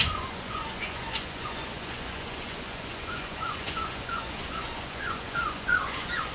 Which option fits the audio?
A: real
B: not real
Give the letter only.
B